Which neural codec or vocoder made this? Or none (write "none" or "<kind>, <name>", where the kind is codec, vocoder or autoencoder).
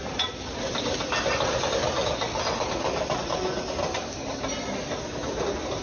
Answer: none